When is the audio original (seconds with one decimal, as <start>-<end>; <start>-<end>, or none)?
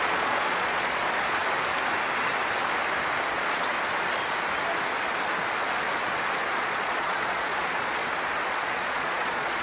1.4-3.3; 3.7-6.5; 8.0-8.6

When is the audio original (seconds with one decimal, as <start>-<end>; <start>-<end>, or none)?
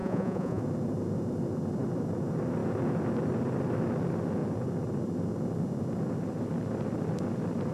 0.6-7.7